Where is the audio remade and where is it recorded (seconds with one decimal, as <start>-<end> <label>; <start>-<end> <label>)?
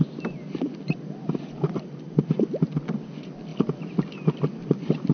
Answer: 0.0-5.1 recorded